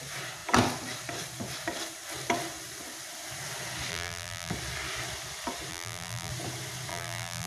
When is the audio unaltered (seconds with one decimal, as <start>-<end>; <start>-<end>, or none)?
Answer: 0.0-3.9; 4.5-5.7; 6.3-6.9